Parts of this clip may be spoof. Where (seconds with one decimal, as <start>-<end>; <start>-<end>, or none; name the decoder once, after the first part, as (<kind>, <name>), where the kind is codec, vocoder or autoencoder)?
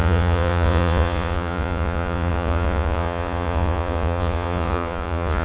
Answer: 0.0-5.4 (vocoder, Vocos)